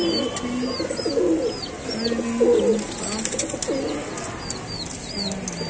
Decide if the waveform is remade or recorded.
recorded